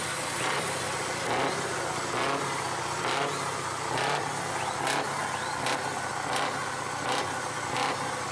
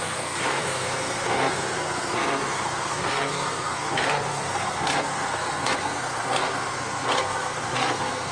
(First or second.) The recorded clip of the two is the first